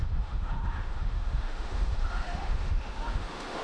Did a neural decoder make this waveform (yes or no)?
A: yes